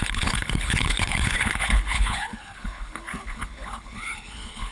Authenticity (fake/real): fake